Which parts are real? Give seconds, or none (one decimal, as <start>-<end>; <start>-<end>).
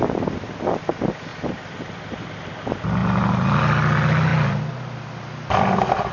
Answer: 0.0-1.3; 2.6-3.0; 3.6-6.1